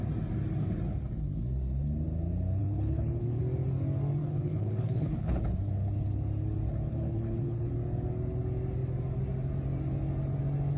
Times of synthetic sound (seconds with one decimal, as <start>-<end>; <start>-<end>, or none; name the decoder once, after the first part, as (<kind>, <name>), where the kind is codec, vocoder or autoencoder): 2.6-3.4 (codec, HILCodec); 4.2-5.4; 6.9-7.7

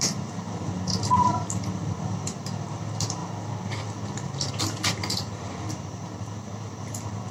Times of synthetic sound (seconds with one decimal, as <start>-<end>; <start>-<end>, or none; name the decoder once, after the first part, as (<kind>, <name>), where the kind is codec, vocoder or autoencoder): 0.0-3.2 (vocoder, BigVGAN v2); 4.6-7.3